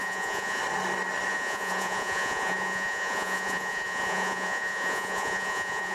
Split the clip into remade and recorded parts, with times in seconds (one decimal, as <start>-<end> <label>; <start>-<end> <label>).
0.0-0.6 remade; 0.6-1.3 recorded; 1.3-5.9 remade